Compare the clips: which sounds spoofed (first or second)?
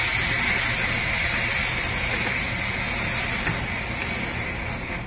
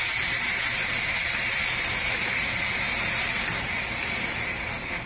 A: second